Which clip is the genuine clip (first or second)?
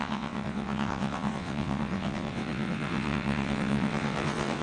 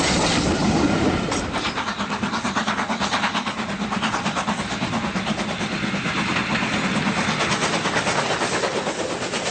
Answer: second